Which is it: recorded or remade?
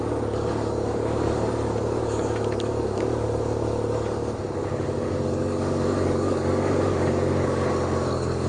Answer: remade